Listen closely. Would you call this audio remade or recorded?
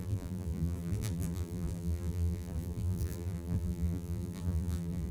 remade